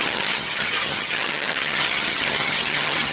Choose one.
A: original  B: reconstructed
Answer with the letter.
B